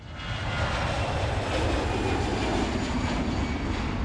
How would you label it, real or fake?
real